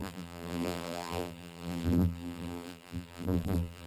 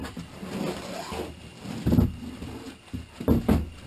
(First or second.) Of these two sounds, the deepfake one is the first